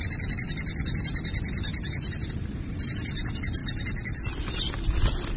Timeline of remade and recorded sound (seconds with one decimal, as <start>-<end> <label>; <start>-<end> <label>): 0.0-5.4 recorded